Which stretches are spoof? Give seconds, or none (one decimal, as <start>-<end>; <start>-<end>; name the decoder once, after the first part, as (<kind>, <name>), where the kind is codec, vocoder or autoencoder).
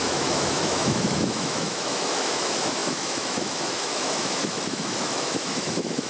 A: 0.0-6.1 (autoencoder, DAC-VAE)